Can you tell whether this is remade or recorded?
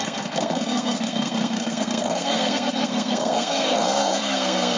remade